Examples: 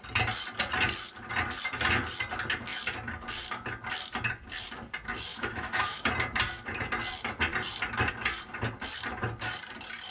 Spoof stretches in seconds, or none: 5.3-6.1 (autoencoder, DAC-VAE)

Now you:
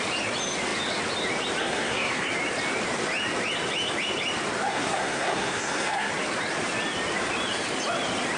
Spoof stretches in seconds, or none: 1.6-2.3 (codec, SNAC); 4.7-6.1

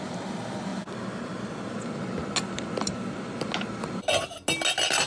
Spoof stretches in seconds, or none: none

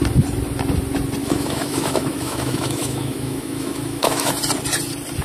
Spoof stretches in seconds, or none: 1.2-4.3 (autoencoder, DAC-VAE)

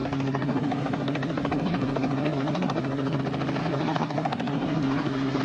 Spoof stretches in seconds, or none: 0.0-3.2 (codec, SNAC); 3.6-5.4

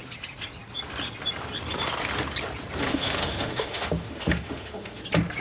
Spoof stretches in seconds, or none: 2.9-5.0 (autoencoder, DAC-VAE)

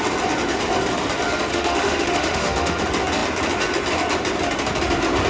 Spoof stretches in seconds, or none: 1.5-2.8 (autoencoder, DAC-VAE)